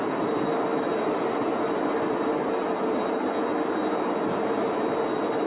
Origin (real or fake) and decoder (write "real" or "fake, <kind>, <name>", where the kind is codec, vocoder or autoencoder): real